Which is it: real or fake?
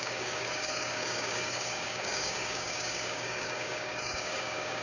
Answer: fake